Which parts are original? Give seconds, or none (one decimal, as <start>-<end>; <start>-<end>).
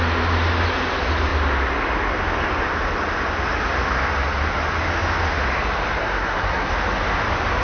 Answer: 0.0-6.0; 6.7-7.6